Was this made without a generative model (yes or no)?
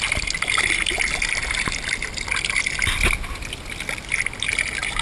yes